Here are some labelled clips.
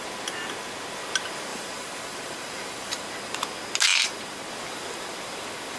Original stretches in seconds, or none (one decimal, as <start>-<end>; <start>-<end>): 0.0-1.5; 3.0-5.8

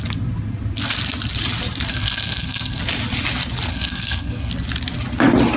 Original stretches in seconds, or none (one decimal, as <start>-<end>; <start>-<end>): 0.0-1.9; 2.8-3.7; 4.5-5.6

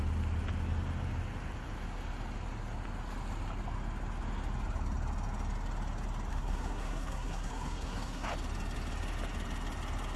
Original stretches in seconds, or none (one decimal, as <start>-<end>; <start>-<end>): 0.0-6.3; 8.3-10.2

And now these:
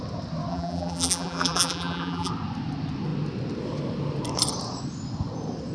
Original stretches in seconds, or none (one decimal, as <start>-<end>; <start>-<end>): 0.0-0.5; 2.3-5.7

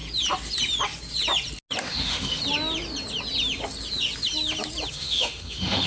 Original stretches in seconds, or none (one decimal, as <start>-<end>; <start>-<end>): 0.0-1.8; 2.4-4.9

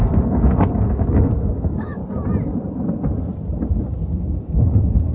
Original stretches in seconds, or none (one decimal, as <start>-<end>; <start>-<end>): 2.0-4.4

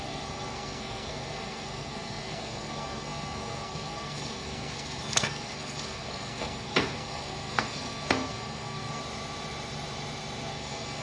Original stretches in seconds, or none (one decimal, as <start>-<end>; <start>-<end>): 9.0-10.5

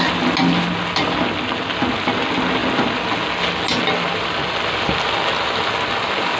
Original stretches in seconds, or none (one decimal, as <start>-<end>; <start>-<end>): 0.0-6.4